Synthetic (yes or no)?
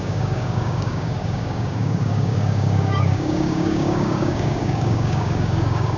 yes